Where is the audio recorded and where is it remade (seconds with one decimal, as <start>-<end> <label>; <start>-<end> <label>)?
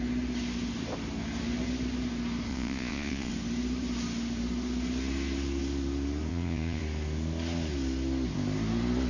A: 0.0-2.5 recorded; 2.5-3.3 remade; 3.3-6.3 recorded; 6.3-6.8 remade; 6.8-9.1 recorded